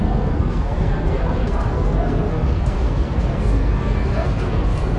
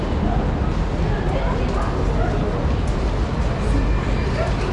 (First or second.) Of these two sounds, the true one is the second